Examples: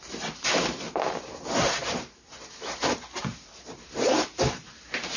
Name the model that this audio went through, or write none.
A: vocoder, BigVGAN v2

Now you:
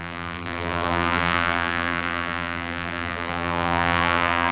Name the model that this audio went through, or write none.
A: vocoder, BigVGAN v2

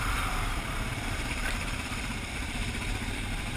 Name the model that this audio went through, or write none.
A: vocoder, BigVGAN v2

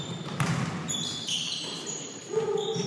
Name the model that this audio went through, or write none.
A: vocoder, BigVGAN v2